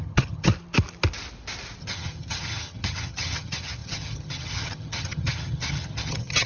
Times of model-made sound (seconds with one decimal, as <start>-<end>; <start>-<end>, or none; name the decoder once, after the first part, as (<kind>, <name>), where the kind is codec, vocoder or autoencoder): 0.0-0.5 (vocoder, HiFi-GAN); 1.8-6.5